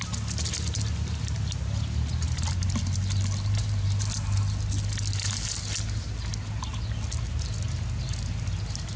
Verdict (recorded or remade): recorded